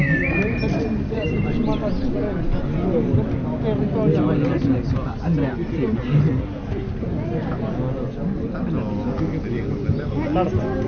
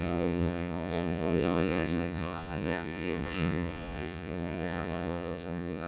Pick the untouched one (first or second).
first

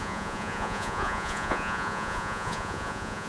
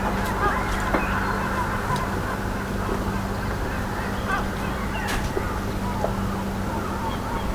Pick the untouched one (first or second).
second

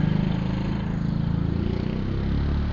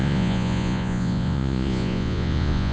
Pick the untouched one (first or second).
first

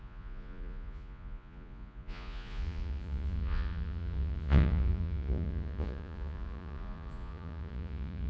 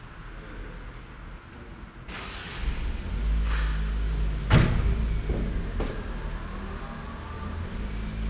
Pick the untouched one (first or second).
second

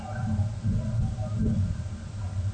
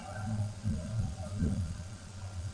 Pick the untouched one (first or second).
first